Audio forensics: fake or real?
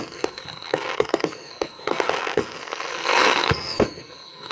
fake